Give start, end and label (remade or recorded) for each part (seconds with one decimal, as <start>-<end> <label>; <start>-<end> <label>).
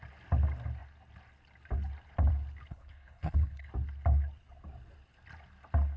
0.0-2.7 recorded; 2.7-3.7 remade; 3.7-6.0 recorded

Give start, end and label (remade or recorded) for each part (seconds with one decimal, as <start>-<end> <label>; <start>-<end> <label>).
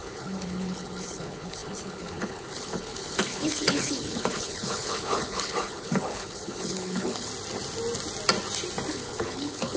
0.0-7.3 remade; 7.3-8.9 recorded; 8.9-9.8 remade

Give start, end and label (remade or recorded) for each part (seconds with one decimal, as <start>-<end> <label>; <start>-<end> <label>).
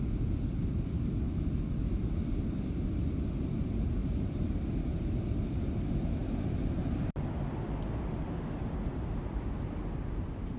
0.0-10.6 recorded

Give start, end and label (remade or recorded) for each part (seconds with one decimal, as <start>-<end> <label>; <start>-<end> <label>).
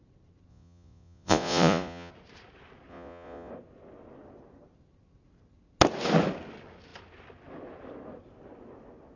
0.0-0.5 recorded; 0.5-2.1 remade; 2.1-2.9 recorded; 2.9-3.5 remade; 3.5-9.2 recorded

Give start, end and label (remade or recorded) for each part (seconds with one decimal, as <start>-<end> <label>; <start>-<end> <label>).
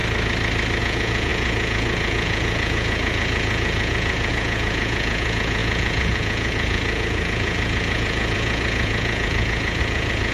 0.0-0.8 recorded; 0.8-10.3 remade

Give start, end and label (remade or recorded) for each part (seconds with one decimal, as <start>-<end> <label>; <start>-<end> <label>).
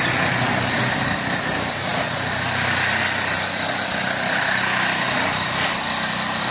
0.0-6.5 recorded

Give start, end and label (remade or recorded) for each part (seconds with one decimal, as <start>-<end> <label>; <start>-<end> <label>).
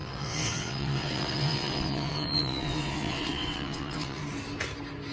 0.0-4.2 remade; 4.2-5.1 recorded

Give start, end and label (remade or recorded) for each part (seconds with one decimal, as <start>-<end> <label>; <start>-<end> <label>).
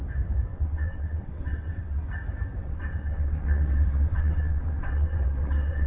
0.0-0.5 recorded; 0.5-2.0 remade; 2.0-2.6 recorded; 2.6-5.9 remade